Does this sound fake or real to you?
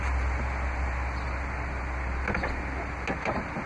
real